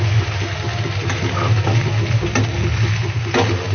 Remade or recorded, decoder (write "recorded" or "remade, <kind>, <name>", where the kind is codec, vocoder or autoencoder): recorded